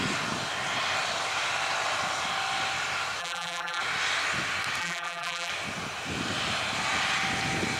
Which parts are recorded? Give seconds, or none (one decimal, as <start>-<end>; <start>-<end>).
0.0-3.2; 3.8-4.8; 5.5-7.8